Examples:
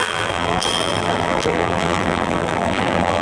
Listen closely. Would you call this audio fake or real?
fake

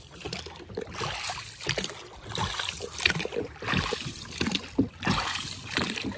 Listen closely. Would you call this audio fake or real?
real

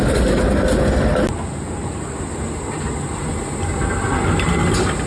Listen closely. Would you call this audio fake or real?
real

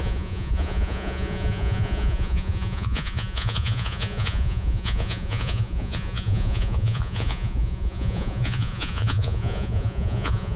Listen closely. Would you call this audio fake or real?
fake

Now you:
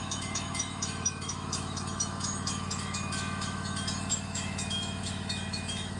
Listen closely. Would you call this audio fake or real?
fake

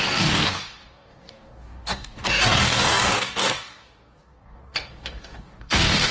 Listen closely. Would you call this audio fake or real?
fake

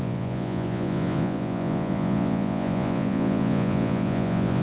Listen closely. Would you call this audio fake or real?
fake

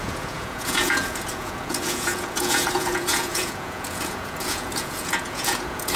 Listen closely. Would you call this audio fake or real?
fake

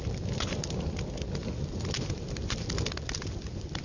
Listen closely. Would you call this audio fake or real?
fake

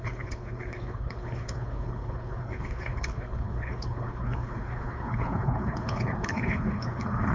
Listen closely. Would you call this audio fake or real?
fake